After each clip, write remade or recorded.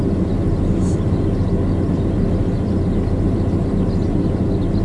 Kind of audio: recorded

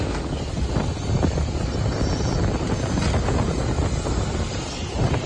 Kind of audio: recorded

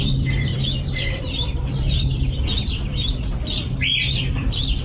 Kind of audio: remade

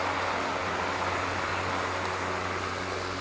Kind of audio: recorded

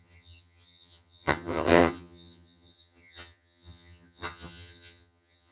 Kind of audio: remade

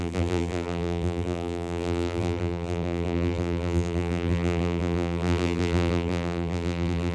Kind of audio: remade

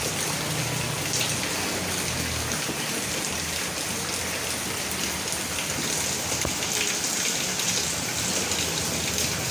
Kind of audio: recorded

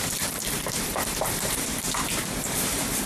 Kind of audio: remade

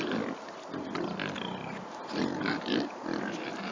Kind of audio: recorded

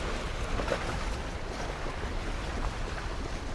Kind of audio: recorded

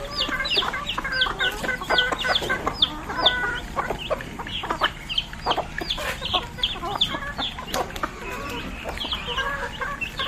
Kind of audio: recorded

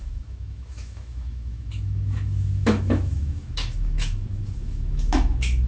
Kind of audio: remade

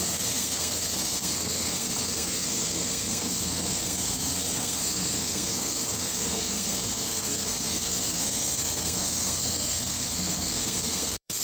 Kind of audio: remade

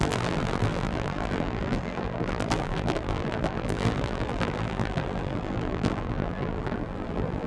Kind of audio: remade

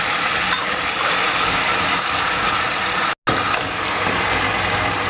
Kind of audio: recorded